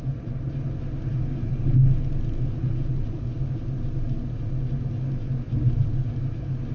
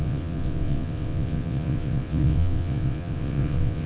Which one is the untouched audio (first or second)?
first